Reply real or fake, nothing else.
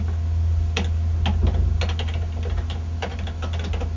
real